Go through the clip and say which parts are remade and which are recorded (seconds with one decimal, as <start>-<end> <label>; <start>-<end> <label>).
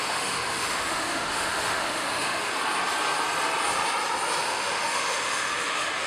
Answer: 0.0-2.5 remade; 2.5-4.4 recorded; 4.4-6.1 remade